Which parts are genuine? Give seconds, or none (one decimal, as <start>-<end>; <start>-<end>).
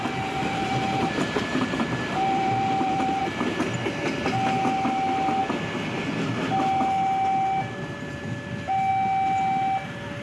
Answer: 0.0-0.4; 3.2-10.2